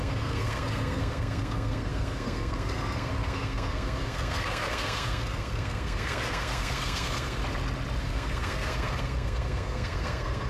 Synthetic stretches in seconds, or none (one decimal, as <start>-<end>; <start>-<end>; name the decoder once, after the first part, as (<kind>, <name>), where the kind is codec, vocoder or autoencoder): 0.0-7.4 (codec, SNAC); 8.0-10.5